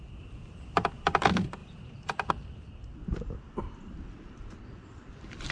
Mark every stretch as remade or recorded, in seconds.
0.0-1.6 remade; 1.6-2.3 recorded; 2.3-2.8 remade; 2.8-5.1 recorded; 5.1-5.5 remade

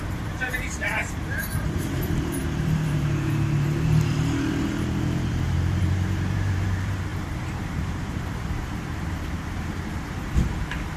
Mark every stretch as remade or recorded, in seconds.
0.0-11.0 remade